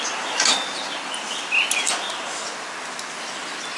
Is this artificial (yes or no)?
no